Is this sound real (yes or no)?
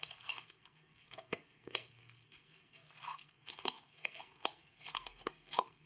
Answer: no